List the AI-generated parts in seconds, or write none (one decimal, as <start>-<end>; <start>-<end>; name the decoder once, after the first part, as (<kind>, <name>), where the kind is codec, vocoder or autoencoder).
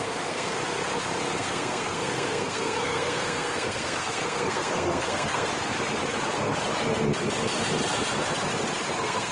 0.0-0.6 (codec, SNAC); 1.3-5.5; 8.9-9.3